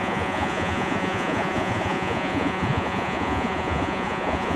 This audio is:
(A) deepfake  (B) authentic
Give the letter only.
A